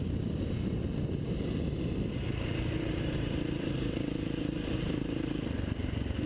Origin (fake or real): real